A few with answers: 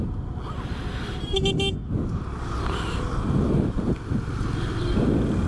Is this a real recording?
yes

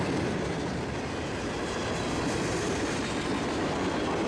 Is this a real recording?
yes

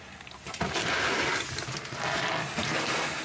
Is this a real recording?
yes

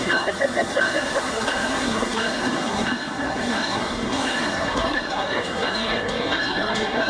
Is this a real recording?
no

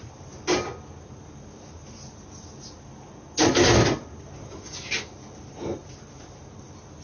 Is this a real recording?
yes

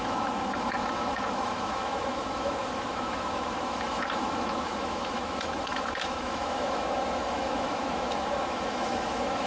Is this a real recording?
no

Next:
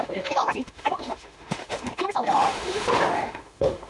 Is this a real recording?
no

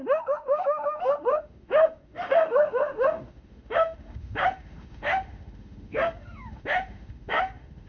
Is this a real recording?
no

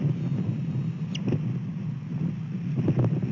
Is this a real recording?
yes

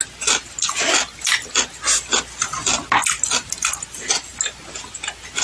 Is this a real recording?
yes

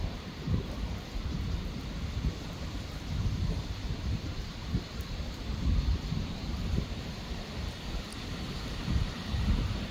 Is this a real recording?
no